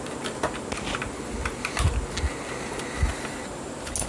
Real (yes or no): yes